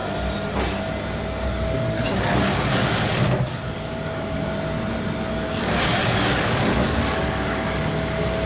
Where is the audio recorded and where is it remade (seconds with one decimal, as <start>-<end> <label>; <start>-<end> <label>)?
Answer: 0.0-1.4 recorded; 1.4-4.5 remade; 4.5-5.3 recorded; 5.3-8.5 remade

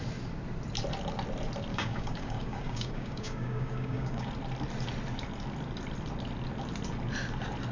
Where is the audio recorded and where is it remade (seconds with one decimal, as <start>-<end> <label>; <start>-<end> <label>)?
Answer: 0.0-1.7 recorded; 1.7-4.3 remade; 4.3-7.7 recorded

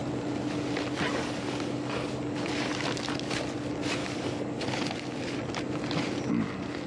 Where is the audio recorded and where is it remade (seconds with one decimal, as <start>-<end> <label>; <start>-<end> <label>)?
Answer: 0.0-1.1 recorded; 1.1-2.7 remade; 2.7-4.0 recorded; 4.0-5.4 remade; 5.4-6.9 recorded

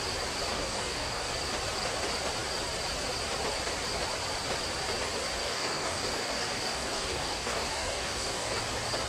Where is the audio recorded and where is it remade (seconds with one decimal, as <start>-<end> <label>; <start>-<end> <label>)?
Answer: 0.0-0.5 recorded; 0.5-1.3 remade; 1.3-5.4 recorded; 5.4-8.6 remade; 8.6-9.1 recorded

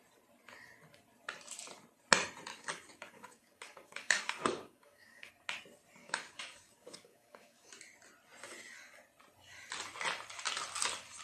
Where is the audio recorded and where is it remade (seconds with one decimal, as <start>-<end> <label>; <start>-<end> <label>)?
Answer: 0.0-2.5 recorded; 2.5-5.3 remade; 5.3-6.0 recorded; 6.0-7.7 remade; 7.7-11.2 recorded

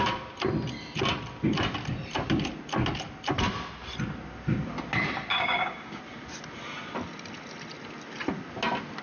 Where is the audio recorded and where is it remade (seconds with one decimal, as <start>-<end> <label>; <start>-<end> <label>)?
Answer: 0.0-5.3 recorded; 5.3-6.0 remade; 6.0-9.0 recorded

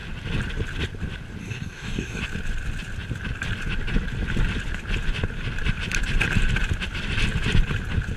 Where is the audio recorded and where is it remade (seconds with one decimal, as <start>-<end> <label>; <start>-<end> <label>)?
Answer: 0.0-1.4 recorded; 1.4-2.2 remade; 2.2-8.2 recorded

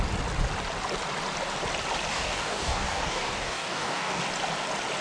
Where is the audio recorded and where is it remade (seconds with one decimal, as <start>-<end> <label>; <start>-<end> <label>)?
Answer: 0.0-2.1 recorded; 2.1-4.2 remade; 4.2-5.0 recorded